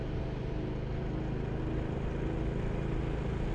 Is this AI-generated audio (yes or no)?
no